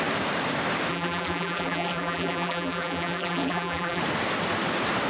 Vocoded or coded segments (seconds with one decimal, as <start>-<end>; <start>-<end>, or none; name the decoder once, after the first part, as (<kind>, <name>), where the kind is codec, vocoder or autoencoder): 0.9-4.0 (vocoder, BigVGAN v2)